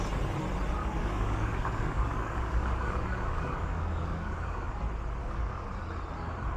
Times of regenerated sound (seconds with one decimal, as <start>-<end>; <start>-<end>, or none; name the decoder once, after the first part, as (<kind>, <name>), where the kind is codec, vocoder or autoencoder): 0.8-4.8 (codec, DAC); 5.2-5.7